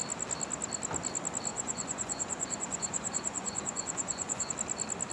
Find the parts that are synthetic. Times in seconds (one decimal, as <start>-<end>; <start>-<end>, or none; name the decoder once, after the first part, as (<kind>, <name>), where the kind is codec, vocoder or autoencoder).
1.5-4.5 (vocoder, Vocos)

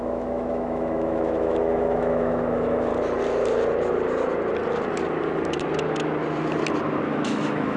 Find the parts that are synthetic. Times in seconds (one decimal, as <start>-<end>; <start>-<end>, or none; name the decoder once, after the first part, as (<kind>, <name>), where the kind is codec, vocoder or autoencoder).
0.0-2.9 (autoencoder, DAC-VAE); 7.1-7.8

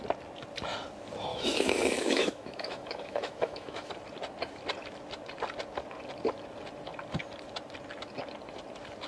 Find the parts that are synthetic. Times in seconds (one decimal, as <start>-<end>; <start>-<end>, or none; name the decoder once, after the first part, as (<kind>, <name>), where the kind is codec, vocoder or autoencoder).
1.3-3.9 (autoencoder, DAC-VAE)

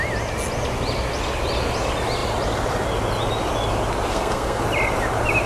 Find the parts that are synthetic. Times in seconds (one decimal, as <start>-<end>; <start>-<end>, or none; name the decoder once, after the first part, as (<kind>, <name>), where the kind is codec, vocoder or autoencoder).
4.1-4.6 (codec, SNAC)

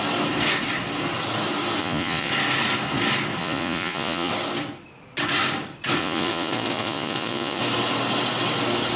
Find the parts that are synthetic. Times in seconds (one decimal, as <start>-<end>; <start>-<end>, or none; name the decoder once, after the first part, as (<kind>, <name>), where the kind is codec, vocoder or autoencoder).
1.8-2.3 (vocoder, Vocos); 3.4-4.3; 6.0-7.6

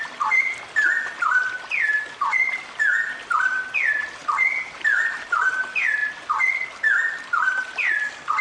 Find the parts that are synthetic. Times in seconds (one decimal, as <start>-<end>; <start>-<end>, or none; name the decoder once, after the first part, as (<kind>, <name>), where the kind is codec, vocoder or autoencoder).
none